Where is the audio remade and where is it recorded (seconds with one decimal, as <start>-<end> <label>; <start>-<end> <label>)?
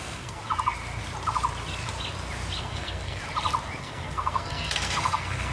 0.0-0.4 remade; 0.4-2.6 recorded; 2.6-3.2 remade; 3.2-3.8 recorded; 3.8-5.5 remade